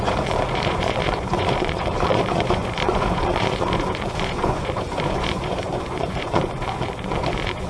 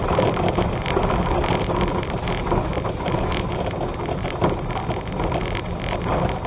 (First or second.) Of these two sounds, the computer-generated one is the first